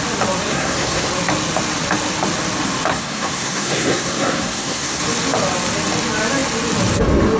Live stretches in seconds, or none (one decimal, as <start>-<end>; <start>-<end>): 0.0-0.5; 1.1-2.9; 5.0-7.4